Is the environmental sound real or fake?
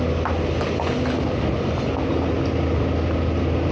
real